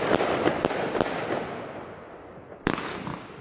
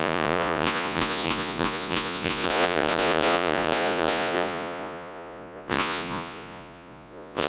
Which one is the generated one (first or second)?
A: second